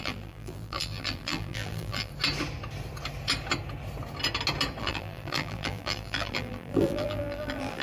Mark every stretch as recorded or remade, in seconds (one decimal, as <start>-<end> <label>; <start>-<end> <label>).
0.0-2.1 remade; 2.1-4.8 recorded; 4.8-7.8 remade